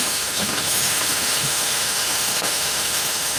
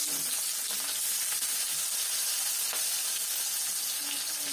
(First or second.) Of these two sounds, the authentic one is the second